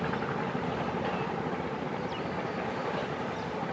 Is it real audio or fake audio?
real